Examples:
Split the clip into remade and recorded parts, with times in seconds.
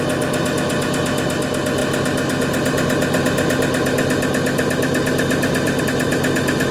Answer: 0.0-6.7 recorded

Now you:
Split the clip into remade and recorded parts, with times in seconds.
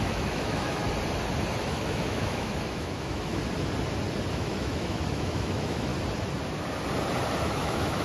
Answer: 0.0-0.8 remade; 0.8-1.6 recorded; 1.6-3.4 remade; 3.4-4.3 recorded; 4.3-5.9 remade; 5.9-7.4 recorded; 7.4-8.0 remade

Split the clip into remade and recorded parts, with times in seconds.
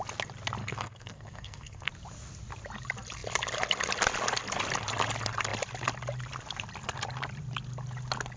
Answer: 0.0-0.6 recorded; 0.6-1.9 remade; 1.9-8.4 recorded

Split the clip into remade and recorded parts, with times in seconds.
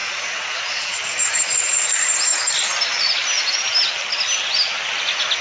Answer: 0.0-2.3 remade; 2.3-5.0 recorded; 5.0-5.4 remade